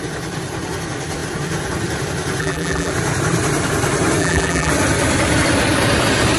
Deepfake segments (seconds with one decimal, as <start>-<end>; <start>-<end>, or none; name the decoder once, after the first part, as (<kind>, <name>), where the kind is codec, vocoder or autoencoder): 2.4-2.9 (vocoder, BigVGAN v2); 4.2-4.7